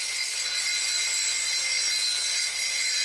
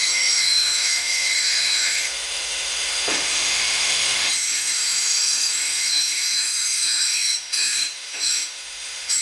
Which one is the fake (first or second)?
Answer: second